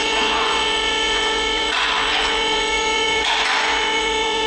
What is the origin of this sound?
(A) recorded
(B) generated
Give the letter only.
B